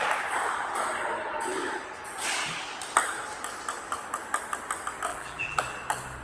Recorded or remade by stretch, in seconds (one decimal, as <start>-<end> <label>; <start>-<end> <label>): 0.0-5.1 recorded; 5.1-5.6 remade; 5.6-6.2 recorded